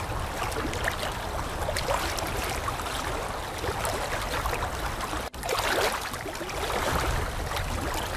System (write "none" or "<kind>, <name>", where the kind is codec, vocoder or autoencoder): none